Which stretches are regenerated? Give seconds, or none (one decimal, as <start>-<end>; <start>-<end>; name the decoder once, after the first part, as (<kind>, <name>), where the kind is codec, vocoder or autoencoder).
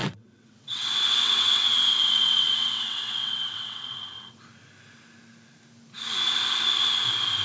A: 0.0-4.4 (vocoder, WaveNeXt)